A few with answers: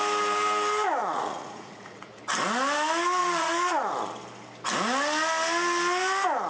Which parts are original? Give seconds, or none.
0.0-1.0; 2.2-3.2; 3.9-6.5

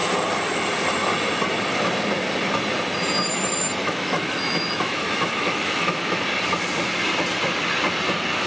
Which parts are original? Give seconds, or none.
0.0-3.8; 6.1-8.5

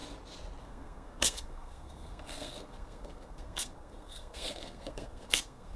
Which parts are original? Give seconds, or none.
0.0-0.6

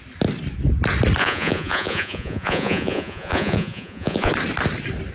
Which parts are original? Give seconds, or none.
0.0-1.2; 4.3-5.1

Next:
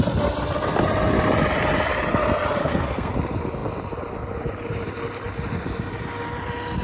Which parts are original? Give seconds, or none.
0.0-2.6; 3.1-6.8

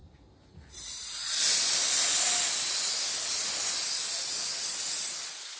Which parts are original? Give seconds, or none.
0.0-5.6

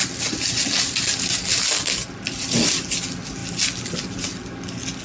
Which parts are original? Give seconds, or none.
0.0-5.0

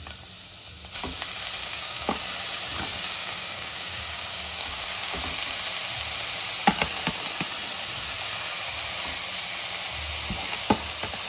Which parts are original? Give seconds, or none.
0.0-1.6; 2.2-2.9; 5.2-11.3